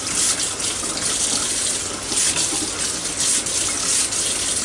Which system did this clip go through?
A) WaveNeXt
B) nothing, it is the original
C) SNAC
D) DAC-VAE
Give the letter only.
B